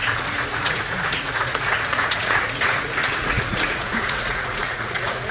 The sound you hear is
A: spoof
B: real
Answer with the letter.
A